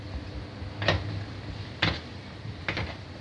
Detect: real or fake real